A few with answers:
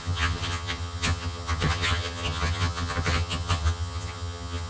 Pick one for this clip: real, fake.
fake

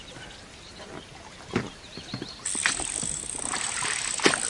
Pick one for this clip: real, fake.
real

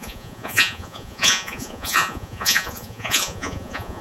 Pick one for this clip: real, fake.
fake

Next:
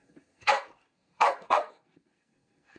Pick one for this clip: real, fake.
fake